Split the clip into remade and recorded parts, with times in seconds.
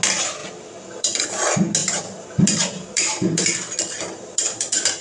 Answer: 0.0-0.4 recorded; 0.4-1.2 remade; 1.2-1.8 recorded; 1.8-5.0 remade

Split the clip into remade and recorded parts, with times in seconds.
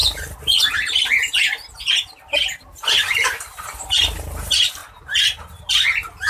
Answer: 0.0-4.8 remade; 4.8-5.7 recorded; 5.7-6.3 remade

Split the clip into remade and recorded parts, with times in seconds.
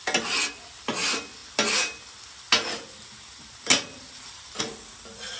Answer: 0.0-5.4 recorded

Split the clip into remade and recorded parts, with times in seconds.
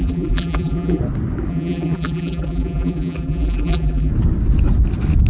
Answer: 0.0-1.0 remade; 1.0-1.5 recorded; 1.5-4.1 remade; 4.1-5.3 recorded